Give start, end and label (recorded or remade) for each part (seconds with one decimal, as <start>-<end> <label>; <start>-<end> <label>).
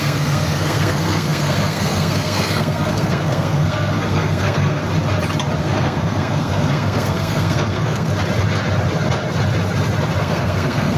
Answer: 0.0-4.8 remade; 4.8-5.6 recorded; 5.6-8.1 remade; 8.1-10.2 recorded; 10.2-11.0 remade